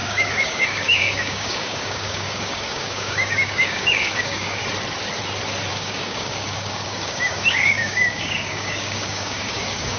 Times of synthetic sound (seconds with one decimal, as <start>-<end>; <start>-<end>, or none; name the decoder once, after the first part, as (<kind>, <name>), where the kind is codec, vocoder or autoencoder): 0.0-4.6 (codec, DAC); 5.7-10.0

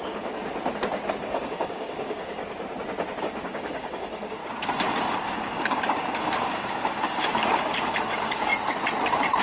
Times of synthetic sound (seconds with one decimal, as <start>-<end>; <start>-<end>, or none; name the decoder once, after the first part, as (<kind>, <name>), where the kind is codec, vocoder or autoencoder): 0.0-0.4 (codec, DAC); 1.2-2.4; 3.2-4.4; 5.1-8.5

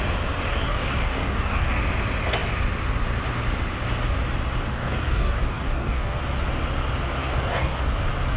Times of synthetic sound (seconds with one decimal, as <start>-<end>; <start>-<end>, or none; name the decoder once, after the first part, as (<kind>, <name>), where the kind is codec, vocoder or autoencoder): 0.5-1.8 (codec, DAC); 4.7-6.2; 7.2-7.8

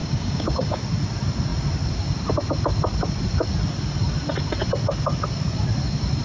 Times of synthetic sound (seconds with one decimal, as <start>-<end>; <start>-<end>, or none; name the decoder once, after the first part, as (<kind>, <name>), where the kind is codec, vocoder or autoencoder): 0.0-0.8 (codec, DAC)

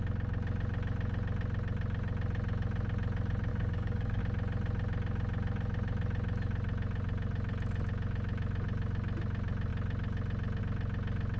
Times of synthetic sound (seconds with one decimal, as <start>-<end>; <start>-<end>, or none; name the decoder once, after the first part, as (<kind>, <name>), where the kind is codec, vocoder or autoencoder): 3.5-4.2 (codec, DAC)

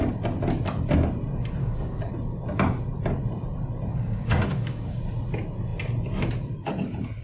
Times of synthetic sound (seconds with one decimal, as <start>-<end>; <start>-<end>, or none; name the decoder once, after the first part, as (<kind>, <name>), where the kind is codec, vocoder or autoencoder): 1.6-2.1 (codec, DAC); 3.9-5.0

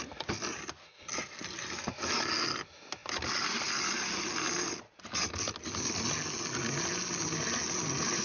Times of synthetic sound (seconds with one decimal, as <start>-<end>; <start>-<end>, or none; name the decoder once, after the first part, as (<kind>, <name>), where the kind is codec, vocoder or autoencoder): none

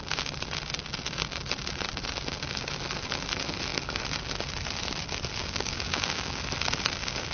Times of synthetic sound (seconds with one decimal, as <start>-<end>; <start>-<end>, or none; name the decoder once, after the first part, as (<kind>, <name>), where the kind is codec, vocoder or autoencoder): 5.4-6.4 (codec, DAC)